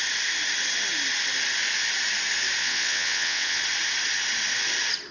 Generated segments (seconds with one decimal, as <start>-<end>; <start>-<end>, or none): 2.6-3.6